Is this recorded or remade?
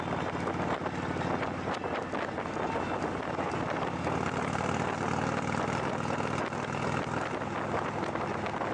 recorded